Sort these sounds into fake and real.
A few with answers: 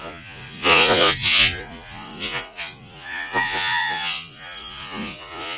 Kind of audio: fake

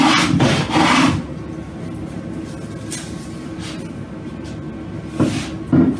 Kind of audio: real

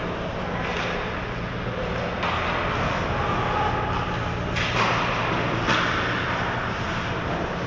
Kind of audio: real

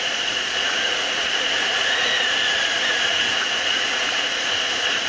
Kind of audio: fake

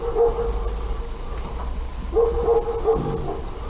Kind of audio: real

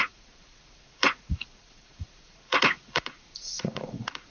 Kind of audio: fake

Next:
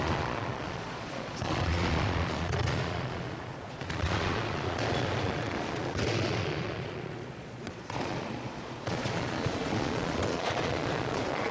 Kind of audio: fake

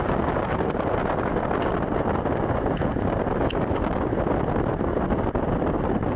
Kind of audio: real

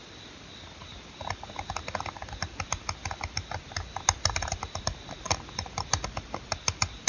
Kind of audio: real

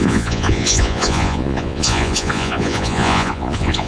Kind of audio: fake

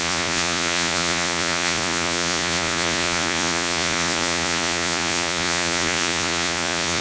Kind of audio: fake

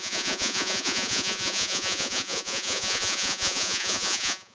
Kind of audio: fake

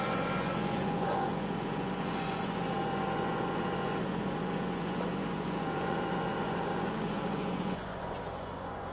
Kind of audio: fake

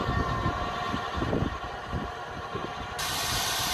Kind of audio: real